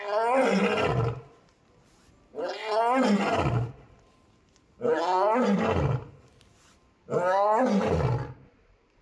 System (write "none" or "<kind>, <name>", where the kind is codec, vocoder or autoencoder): none